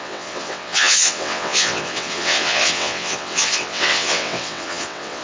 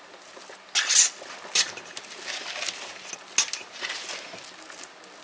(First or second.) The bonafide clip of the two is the second